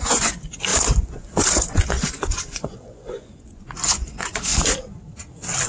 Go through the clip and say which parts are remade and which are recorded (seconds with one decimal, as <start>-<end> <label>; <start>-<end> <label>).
0.0-4.5 remade; 4.5-5.7 recorded